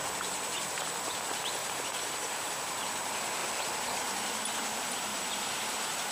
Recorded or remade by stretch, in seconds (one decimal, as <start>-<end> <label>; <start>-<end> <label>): 0.0-1.6 recorded; 1.6-2.6 remade; 2.6-5.1 recorded; 5.1-6.1 remade